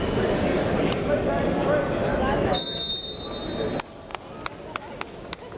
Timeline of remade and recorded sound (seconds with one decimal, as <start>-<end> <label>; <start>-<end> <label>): 0.0-2.1 recorded; 2.1-2.9 remade; 2.9-5.6 recorded